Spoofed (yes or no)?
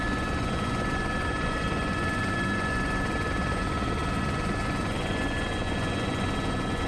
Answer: yes